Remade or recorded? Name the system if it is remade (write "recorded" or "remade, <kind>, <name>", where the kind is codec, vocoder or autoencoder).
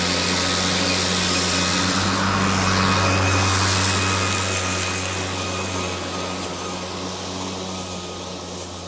recorded